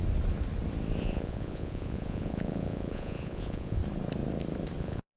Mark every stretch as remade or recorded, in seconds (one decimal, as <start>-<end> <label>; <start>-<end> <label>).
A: 0.0-1.0 recorded; 1.0-3.8 remade; 3.8-4.8 recorded; 4.8-5.2 remade